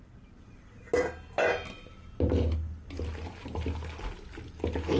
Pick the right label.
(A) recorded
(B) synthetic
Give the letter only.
A